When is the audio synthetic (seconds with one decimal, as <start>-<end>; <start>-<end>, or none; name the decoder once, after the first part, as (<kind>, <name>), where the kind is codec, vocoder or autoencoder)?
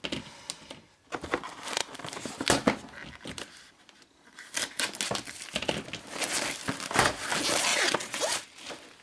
7.7-8.2 (vocoder, WaveNeXt)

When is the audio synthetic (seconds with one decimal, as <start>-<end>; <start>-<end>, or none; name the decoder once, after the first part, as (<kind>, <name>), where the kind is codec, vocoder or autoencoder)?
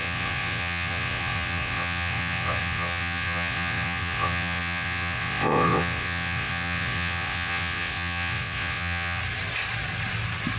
0.0-9.2 (vocoder, WaveNeXt)